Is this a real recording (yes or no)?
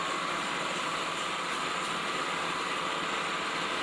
yes